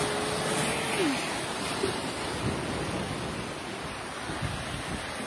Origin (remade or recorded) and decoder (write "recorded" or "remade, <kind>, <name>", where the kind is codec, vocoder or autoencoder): recorded